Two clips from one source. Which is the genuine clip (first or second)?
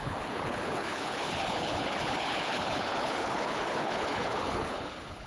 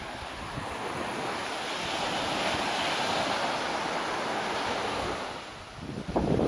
second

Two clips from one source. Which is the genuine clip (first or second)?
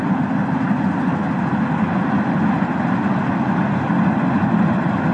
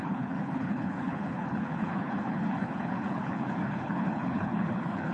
first